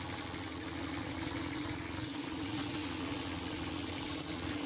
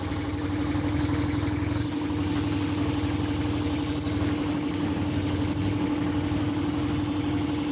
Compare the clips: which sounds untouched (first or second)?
second